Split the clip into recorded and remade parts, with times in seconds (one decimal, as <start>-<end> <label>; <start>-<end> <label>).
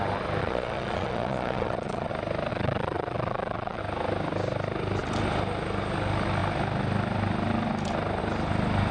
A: 0.0-0.4 recorded; 0.4-2.1 remade; 2.1-2.5 recorded; 2.5-3.8 remade; 3.8-8.9 recorded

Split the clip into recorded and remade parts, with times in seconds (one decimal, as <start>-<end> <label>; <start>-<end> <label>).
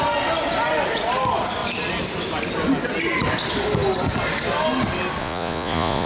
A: 0.0-5.2 recorded; 5.2-6.1 remade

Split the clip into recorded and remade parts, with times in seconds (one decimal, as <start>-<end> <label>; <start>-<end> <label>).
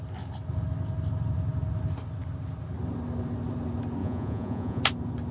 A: 0.0-4.0 recorded; 4.0-4.8 remade; 4.8-5.3 recorded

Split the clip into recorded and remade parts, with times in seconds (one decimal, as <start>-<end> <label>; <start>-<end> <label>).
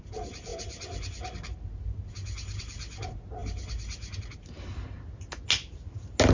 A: 0.0-6.3 recorded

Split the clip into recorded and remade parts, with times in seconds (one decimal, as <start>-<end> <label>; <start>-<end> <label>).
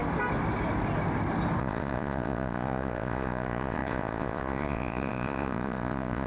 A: 0.0-1.6 recorded; 1.6-6.3 remade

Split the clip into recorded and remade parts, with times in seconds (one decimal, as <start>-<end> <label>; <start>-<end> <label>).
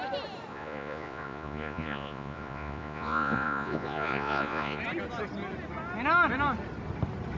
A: 0.0-0.5 recorded; 0.5-4.8 remade; 4.8-7.4 recorded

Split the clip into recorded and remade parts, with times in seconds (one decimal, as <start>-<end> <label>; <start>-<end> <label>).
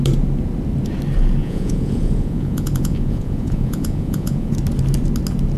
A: 0.0-1.4 recorded; 1.4-4.5 remade; 4.5-5.6 recorded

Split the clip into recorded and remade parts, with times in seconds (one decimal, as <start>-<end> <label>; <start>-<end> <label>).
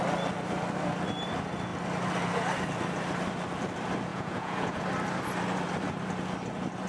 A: 0.0-4.1 recorded; 4.1-4.8 remade; 4.8-6.9 recorded